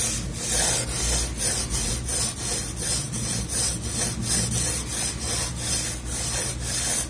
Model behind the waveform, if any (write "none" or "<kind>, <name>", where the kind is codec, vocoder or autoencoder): none